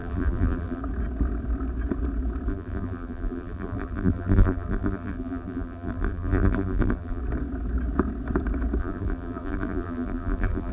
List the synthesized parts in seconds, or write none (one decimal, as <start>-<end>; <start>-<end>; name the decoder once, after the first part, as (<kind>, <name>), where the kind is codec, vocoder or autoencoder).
0.0-0.8 (vocoder, BigVGAN v2); 2.5-7.2; 8.8-10.7